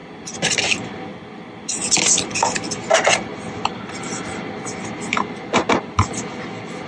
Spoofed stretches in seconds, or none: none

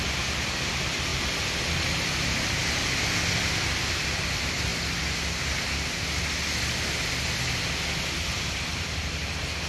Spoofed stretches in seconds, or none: 0.0-2.6 (vocoder, BigVGAN v2); 3.3-4.7; 8.4-9.7

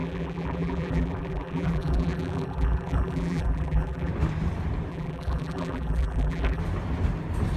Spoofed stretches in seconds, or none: 0.0-4.1 (vocoder, BigVGAN v2); 4.9-6.6

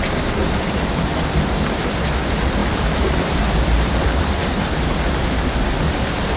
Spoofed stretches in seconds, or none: 0.4-1.1 (vocoder, BigVGAN v2); 2.6-6.4

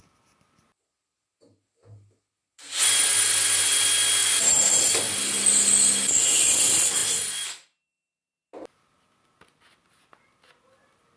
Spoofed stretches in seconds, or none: 4.2-4.8 (vocoder, BigVGAN v2)

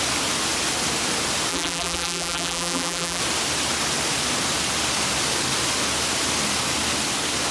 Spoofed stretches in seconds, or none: 1.5-3.2 (vocoder, BigVGAN v2)

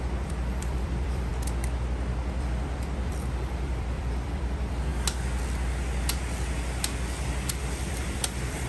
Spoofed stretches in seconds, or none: 0.0-1.3 (vocoder, BigVGAN v2); 2.4-4.9; 7.5-8.7